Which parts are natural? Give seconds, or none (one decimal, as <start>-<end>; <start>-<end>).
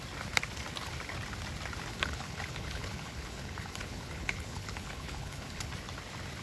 0.0-1.9; 5.7-6.4